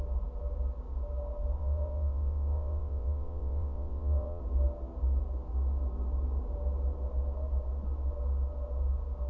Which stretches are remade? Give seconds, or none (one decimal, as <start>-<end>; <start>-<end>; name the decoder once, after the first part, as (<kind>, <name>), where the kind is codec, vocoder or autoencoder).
1.6-4.4 (vocoder, WaveNeXt)